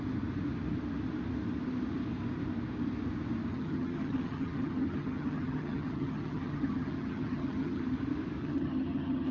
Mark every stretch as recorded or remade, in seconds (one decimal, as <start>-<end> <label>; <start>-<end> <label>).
0.0-3.5 recorded; 3.5-7.8 remade; 7.8-8.4 recorded; 8.4-9.3 remade